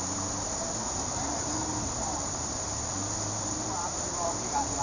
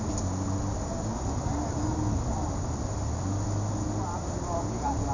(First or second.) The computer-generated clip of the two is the first